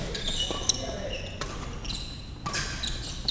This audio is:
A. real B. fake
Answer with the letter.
A